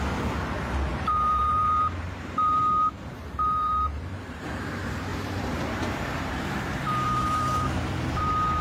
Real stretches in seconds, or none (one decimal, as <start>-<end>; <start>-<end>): 0.0-0.9; 4.6-5.1; 8.2-8.6